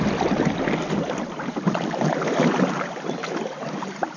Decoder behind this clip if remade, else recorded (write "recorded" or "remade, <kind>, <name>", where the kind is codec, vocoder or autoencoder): recorded